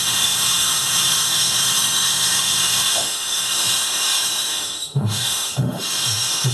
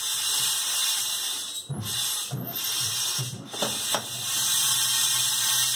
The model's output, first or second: first